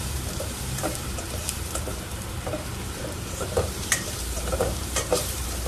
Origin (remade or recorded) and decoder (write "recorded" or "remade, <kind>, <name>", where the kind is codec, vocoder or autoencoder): remade, vocoder, BigVGAN v2